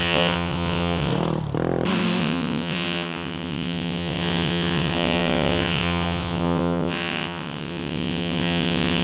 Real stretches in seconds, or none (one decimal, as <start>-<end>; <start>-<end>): 1.1-2.2